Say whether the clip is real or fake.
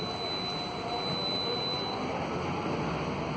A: real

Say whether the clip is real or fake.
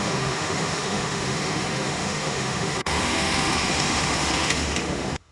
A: fake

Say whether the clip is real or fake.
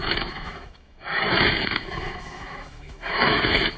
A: fake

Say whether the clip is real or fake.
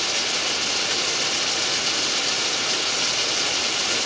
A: real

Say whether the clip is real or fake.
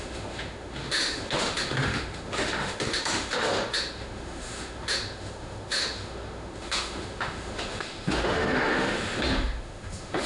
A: fake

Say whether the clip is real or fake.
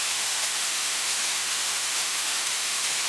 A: fake